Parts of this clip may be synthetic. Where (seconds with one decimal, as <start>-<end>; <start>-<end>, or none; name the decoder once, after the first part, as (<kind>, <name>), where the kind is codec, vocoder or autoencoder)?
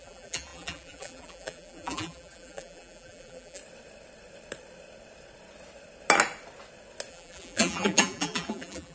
0.0-3.6 (vocoder, BigVGAN v2); 7.1-8.9